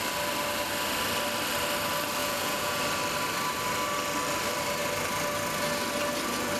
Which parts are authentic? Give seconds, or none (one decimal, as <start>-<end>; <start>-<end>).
0.0-2.2; 2.8-6.6

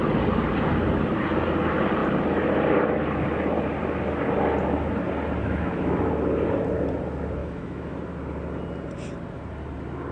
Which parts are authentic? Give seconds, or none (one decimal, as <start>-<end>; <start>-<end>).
0.0-5.4; 6.1-7.4; 8.0-10.1

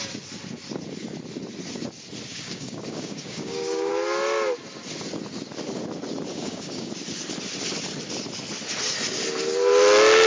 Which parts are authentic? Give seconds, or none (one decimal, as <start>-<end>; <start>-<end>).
0.0-2.3; 3.9-6.3; 6.9-10.3